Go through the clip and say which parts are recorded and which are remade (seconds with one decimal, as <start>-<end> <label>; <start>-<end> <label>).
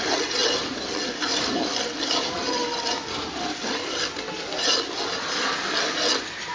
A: 0.0-6.5 recorded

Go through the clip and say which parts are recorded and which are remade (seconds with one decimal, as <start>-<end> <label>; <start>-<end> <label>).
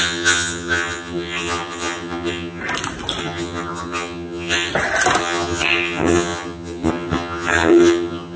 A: 0.0-2.6 remade; 2.6-3.2 recorded; 3.2-4.7 remade; 4.7-5.2 recorded; 5.2-8.4 remade